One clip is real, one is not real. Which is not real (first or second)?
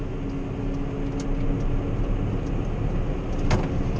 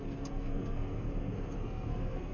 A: second